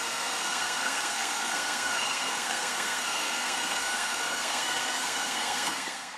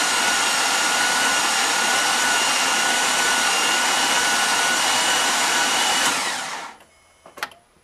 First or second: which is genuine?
second